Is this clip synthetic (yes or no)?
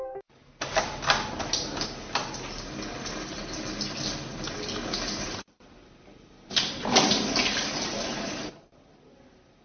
no